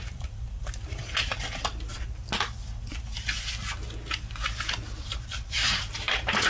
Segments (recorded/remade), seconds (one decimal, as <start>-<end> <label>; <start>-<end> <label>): 0.0-1.0 remade; 1.0-4.9 recorded; 4.9-6.5 remade